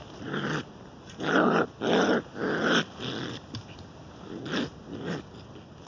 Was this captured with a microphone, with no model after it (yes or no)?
yes